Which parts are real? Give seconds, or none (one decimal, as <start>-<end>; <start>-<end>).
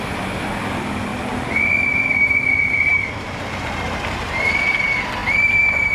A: 0.0-1.1; 4.5-5.2